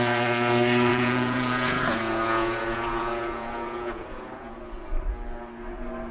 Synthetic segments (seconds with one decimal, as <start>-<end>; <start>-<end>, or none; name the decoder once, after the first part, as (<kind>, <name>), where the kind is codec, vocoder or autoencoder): 0.9-4.6 (vocoder, Vocos)